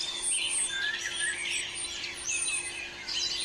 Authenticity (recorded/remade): recorded